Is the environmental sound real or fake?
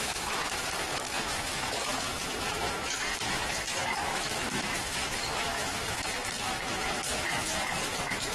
fake